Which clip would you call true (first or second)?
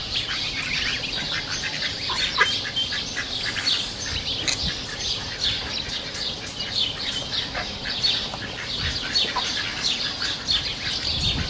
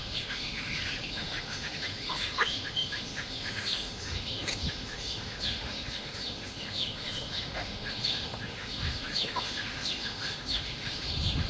first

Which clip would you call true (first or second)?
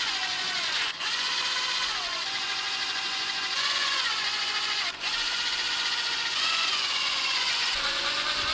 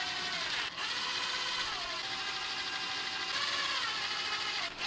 second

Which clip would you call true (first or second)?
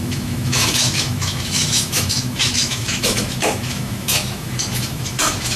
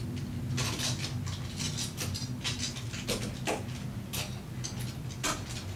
second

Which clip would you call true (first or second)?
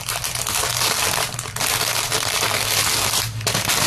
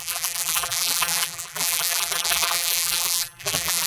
first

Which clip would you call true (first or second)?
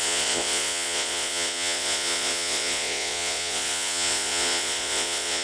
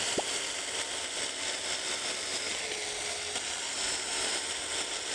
second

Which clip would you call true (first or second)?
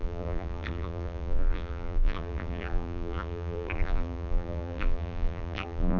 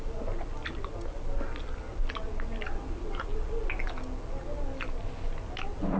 second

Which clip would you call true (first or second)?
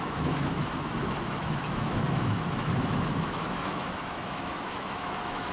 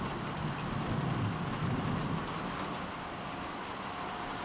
second